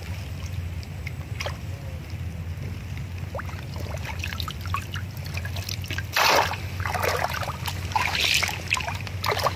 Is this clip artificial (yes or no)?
no